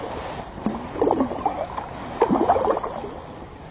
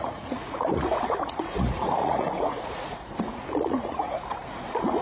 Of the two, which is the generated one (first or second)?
second